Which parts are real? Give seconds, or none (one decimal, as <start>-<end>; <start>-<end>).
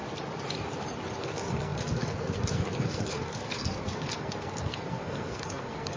0.0-1.2